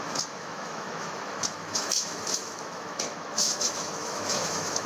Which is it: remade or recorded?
remade